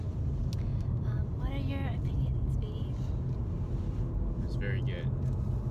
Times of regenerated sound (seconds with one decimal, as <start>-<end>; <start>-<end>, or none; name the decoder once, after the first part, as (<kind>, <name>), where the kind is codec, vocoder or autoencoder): 0.7-1.5 (vocoder, BigVGAN v2)